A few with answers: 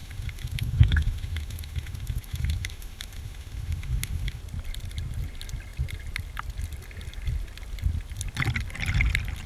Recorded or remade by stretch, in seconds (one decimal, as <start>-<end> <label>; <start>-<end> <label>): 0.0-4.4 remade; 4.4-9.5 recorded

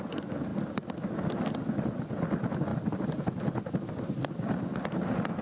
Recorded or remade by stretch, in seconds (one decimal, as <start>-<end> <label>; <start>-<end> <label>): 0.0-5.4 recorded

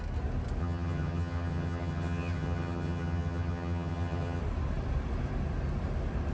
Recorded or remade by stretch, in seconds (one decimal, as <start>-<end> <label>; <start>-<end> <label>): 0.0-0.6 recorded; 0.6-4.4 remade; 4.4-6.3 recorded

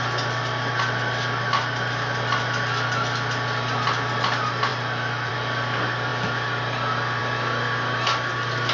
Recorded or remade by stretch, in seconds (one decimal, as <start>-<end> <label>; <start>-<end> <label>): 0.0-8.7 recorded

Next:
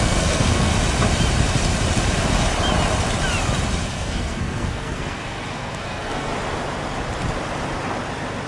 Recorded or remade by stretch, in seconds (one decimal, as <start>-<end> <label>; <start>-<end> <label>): 0.0-0.7 remade; 0.7-3.9 recorded; 3.9-6.3 remade; 6.3-8.5 recorded